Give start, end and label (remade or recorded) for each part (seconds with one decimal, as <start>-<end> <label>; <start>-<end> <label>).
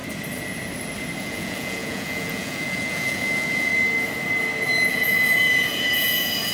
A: 0.0-1.2 recorded; 1.2-3.7 remade; 3.7-4.9 recorded; 4.9-6.5 remade